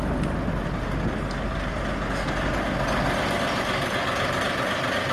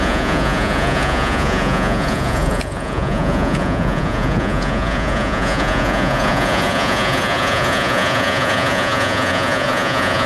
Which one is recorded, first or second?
first